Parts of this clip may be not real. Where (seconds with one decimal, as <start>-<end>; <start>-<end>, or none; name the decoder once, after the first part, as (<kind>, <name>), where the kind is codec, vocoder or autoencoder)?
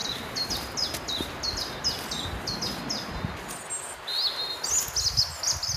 none